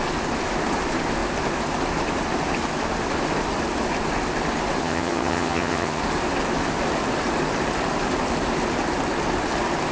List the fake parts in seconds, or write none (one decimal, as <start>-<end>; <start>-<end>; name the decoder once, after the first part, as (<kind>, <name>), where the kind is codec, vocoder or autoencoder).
4.8-6.0 (vocoder, HiFi-GAN)